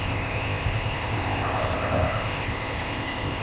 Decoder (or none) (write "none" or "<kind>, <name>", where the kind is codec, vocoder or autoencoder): codec, ZipCodec